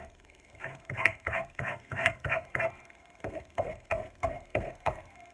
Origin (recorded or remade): remade